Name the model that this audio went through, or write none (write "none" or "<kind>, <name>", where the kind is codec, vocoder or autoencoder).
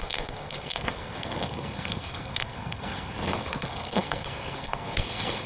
codec, SNAC